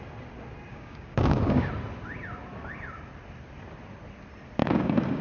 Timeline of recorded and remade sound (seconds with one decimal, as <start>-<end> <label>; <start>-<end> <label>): 0.0-0.7 recorded; 0.7-1.7 remade; 1.7-4.6 recorded; 4.6-5.2 remade